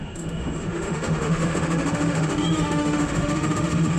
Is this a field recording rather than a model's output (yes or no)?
no